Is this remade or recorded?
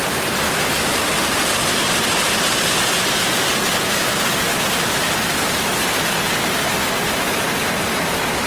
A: recorded